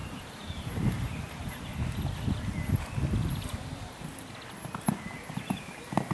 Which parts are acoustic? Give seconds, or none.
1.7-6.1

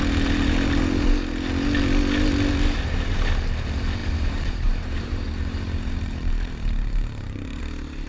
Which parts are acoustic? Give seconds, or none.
0.0-4.0; 7.6-8.1